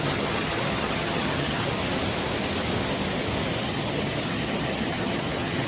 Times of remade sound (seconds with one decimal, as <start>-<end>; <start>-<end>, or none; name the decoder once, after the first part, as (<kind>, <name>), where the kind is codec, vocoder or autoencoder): 0.0-1.8 (vocoder, HiFi-GAN); 3.6-5.7